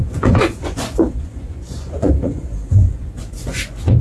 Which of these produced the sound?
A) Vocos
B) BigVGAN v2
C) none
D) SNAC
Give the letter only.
A